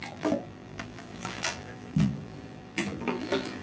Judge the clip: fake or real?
fake